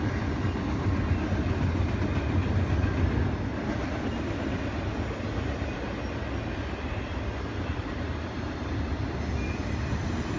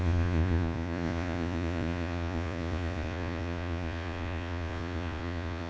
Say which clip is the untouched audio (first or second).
first